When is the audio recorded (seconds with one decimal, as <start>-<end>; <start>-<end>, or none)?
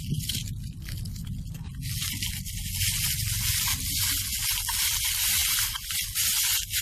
0.0-6.8